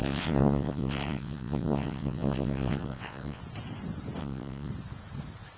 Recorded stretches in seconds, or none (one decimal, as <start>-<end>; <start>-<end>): 3.4-4.2; 4.7-5.6